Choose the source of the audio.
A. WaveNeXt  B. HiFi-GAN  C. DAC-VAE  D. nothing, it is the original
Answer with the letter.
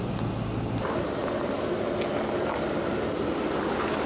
D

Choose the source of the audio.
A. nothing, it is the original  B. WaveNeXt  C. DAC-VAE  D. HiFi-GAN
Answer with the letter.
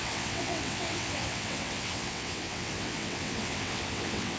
B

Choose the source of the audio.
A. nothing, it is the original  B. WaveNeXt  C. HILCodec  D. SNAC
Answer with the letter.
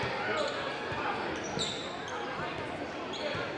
A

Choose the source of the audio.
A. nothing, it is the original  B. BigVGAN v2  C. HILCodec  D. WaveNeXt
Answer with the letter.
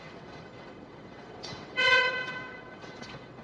D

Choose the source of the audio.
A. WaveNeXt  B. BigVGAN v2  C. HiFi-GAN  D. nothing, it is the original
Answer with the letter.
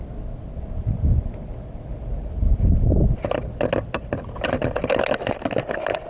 D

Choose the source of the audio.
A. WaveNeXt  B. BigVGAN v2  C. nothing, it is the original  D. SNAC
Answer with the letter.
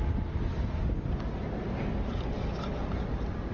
C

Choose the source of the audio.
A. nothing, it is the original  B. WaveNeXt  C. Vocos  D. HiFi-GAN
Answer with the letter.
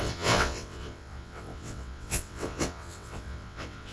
B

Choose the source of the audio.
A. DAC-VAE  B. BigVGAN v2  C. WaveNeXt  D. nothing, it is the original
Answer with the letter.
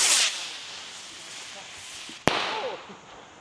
D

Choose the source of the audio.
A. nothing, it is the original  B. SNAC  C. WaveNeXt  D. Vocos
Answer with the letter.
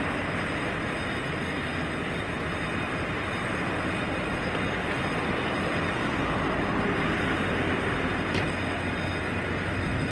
A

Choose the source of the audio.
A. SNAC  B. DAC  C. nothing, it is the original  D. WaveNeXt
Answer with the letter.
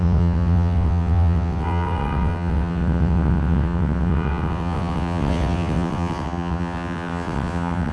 D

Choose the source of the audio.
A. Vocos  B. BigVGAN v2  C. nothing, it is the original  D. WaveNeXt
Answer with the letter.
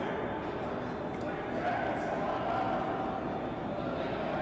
C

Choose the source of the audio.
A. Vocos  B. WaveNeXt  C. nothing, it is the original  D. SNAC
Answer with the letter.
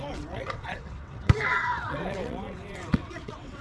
B